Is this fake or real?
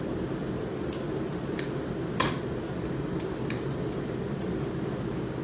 real